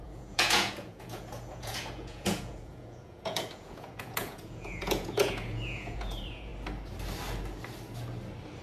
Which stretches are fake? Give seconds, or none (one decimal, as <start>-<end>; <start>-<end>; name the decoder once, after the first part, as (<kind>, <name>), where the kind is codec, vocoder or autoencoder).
0.0-6.5 (vocoder, Vocos)